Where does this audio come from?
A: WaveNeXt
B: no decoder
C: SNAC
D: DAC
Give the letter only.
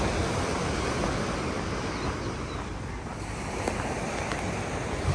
B